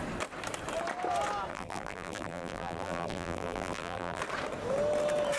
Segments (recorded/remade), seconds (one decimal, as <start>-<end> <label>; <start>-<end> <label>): 0.0-1.5 recorded; 1.5-4.2 remade; 4.2-5.4 recorded